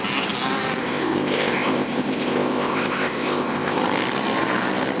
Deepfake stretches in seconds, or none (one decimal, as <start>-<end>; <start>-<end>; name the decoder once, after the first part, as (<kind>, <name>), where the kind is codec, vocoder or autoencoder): 0.8-3.8 (codec, ZipCodec)